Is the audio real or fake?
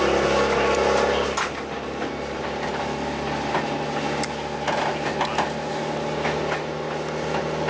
real